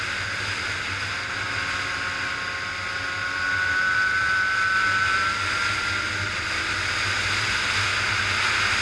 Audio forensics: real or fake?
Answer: real